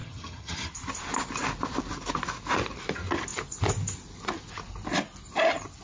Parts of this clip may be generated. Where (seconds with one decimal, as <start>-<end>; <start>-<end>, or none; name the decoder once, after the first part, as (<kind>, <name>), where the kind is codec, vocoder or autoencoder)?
0.0-0.7 (vocoder, HiFi-GAN)